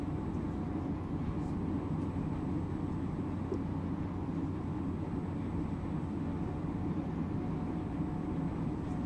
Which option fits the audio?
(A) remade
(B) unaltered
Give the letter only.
B